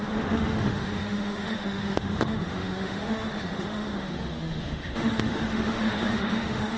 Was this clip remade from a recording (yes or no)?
yes